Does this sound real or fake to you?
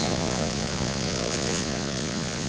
fake